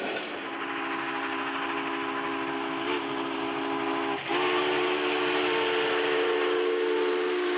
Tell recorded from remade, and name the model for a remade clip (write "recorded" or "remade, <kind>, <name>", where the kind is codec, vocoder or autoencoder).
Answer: recorded